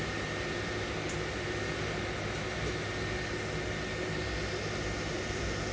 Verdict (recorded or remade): recorded